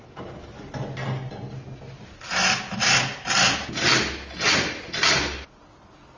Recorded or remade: recorded